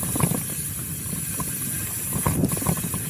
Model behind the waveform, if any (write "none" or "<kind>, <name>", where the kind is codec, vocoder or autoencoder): none